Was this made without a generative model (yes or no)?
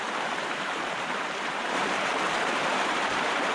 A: no